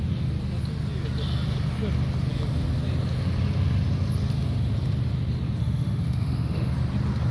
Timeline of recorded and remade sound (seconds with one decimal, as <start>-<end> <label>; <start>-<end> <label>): 0.0-5.6 recorded; 5.6-6.7 remade; 6.7-7.3 recorded